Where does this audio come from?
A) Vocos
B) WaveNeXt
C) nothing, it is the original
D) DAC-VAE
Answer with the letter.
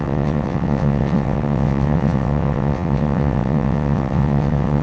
B